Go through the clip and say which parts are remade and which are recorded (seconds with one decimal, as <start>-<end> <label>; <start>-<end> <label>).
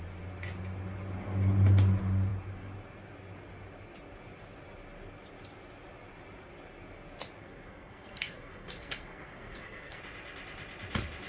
0.0-7.4 recorded; 7.4-10.0 remade; 10.0-11.3 recorded